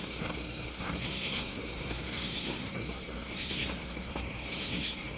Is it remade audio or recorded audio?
remade